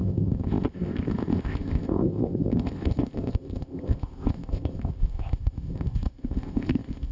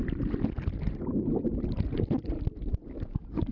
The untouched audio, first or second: second